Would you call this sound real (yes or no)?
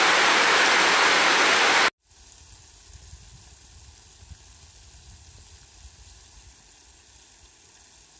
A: yes